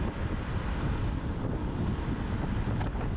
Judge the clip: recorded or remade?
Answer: recorded